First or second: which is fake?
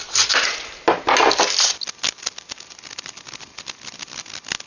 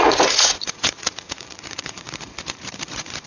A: second